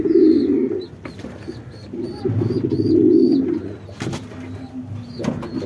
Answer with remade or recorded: recorded